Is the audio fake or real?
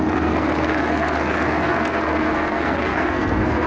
fake